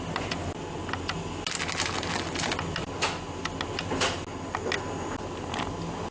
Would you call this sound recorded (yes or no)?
yes